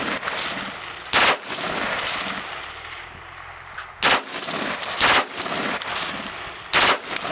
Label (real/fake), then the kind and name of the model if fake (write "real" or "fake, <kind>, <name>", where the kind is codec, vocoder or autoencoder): real